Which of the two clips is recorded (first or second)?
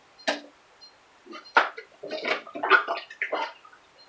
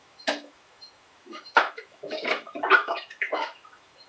first